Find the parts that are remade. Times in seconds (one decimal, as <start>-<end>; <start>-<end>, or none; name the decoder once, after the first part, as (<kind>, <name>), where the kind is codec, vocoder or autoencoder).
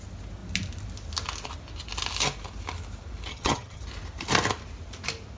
3.3-3.8 (vocoder, HiFi-GAN)